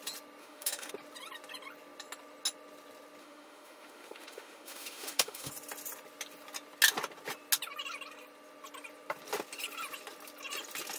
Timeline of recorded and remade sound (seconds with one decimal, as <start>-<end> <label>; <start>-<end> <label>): 0.0-0.4 recorded; 0.4-0.9 remade; 0.9-3.2 recorded; 3.2-5.5 remade; 5.5-11.0 recorded